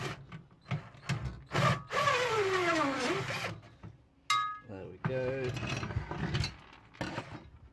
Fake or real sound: real